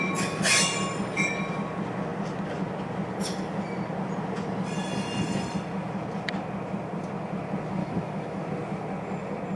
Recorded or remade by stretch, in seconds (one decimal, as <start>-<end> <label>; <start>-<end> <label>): 0.0-7.8 recorded; 7.8-8.4 remade; 8.4-9.6 recorded